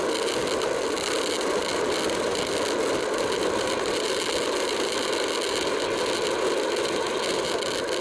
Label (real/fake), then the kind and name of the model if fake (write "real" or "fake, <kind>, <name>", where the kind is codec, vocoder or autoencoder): real